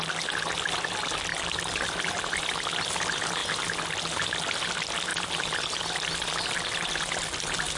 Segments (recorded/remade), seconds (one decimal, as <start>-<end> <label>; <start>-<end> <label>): 0.0-1.3 recorded; 1.3-2.4 remade; 2.4-5.1 recorded; 5.1-6.9 remade; 6.9-7.8 recorded